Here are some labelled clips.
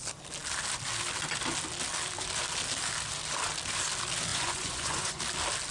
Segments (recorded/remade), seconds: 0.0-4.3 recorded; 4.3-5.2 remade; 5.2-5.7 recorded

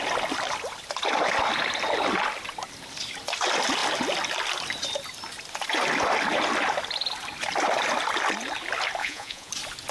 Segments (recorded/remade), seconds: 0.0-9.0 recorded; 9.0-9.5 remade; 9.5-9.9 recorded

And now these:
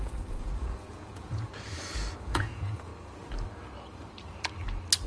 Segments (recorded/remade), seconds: 0.0-1.5 remade; 1.5-2.2 recorded; 2.2-2.9 remade; 2.9-5.1 recorded